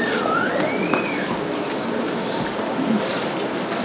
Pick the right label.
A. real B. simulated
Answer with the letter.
A